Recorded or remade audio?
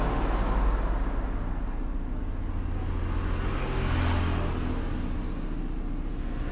recorded